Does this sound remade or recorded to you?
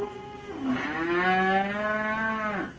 recorded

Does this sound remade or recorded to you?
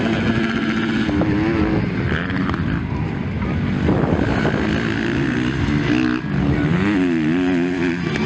recorded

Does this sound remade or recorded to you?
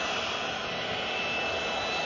recorded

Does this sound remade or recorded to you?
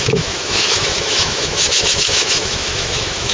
remade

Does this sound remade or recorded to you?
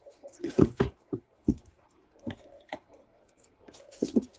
remade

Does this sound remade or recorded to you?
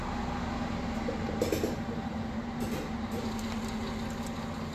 recorded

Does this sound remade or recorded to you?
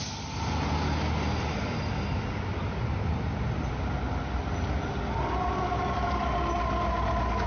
recorded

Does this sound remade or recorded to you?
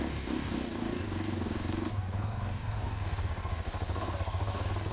remade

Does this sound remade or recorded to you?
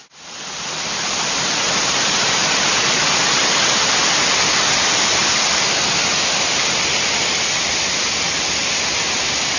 recorded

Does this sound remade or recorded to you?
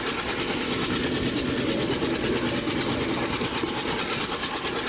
recorded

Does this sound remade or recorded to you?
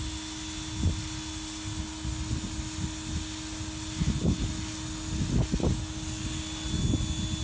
recorded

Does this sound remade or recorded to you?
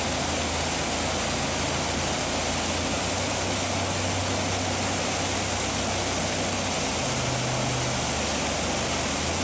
recorded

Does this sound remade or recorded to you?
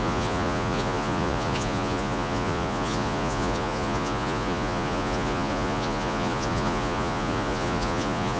remade